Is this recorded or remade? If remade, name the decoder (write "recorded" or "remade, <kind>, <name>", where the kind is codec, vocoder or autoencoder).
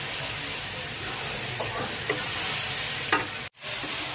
remade, vocoder, BigVGAN v2